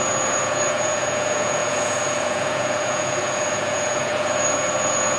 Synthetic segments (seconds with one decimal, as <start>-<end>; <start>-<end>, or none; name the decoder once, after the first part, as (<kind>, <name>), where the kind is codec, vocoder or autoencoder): 0.0-5.2 (vocoder, Vocos)